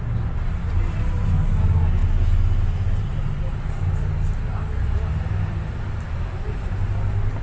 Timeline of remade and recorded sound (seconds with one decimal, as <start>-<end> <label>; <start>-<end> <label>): 0.0-7.4 recorded